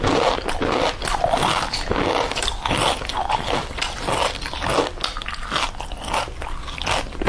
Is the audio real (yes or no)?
yes